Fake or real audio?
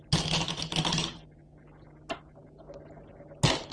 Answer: real